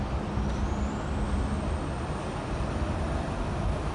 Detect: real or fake real